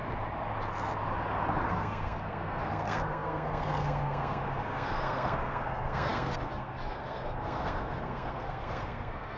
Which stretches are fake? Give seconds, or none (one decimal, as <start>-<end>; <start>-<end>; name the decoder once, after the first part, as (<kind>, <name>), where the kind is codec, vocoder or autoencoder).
1.7-9.4 (codec, SNAC)

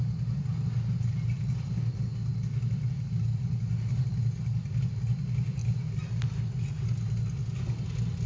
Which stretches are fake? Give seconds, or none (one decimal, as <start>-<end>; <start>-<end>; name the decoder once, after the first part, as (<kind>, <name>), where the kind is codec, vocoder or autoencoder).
5.6-6.2 (vocoder, BigVGAN v2)

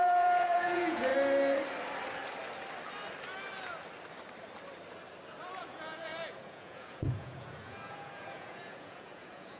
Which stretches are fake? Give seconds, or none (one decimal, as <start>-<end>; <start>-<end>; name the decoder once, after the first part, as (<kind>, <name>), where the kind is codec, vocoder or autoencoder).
0.0-1.1 (vocoder, Vocos); 5.6-9.6

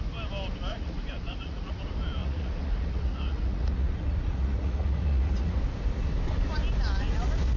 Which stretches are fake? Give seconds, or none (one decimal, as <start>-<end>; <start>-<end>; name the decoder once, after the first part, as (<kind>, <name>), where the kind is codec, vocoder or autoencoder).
0.7-1.8 (vocoder, Vocos); 2.2-5.6

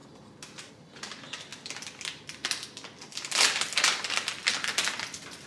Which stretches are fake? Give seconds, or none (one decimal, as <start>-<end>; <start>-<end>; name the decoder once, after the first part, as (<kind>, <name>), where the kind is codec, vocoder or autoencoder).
none

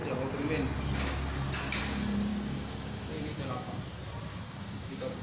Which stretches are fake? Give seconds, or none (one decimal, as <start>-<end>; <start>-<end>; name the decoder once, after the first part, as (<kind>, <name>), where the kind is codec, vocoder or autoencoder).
2.3-3.8 (codec, DAC); 4.3-5.2

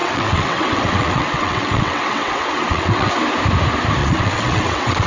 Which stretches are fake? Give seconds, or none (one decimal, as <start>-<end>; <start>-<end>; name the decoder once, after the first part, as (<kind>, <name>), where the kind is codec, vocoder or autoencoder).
0.0-3.1 (vocoder, WaveNeXt); 4.0-5.1

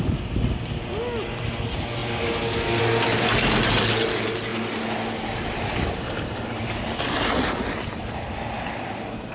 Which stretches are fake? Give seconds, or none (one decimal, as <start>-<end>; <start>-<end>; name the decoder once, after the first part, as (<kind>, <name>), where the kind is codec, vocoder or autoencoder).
none